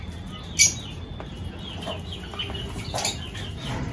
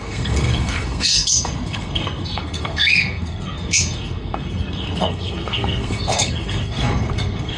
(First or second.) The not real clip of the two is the second